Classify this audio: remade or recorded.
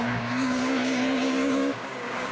remade